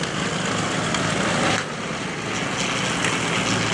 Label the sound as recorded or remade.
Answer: recorded